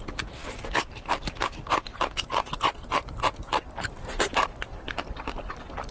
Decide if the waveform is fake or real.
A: fake